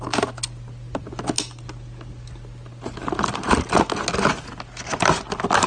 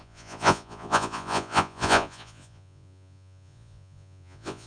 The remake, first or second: second